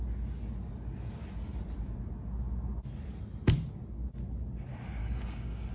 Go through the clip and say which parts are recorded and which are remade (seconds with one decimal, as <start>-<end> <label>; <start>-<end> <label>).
0.0-5.0 recorded; 5.0-5.7 remade